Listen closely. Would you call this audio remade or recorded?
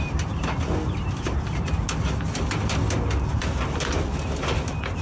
recorded